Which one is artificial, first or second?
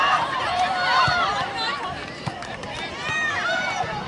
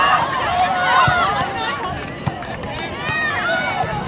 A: first